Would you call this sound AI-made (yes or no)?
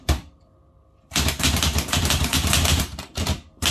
yes